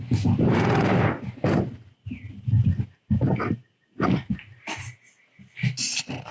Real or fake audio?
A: real